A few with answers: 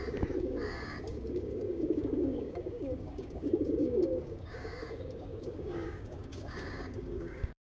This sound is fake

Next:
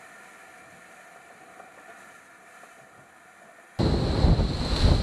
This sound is real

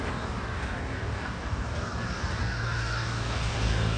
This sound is fake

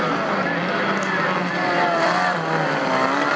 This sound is real